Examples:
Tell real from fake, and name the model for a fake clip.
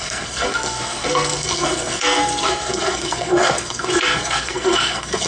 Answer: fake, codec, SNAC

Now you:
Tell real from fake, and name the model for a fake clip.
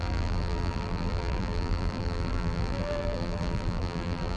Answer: fake, vocoder, BigVGAN v2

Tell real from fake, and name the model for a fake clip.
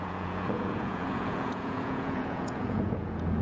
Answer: fake, vocoder, Vocos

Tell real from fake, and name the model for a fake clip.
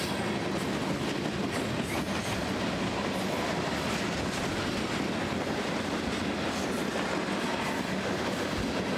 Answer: real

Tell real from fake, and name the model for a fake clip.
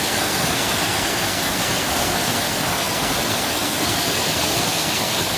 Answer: fake, codec, SNAC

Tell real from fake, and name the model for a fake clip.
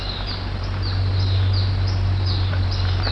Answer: real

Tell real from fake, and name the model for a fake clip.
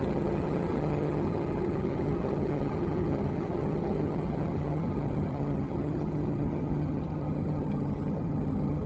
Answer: fake, vocoder, HiFi-GAN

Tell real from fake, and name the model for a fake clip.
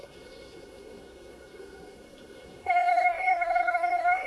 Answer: fake, codec, SNAC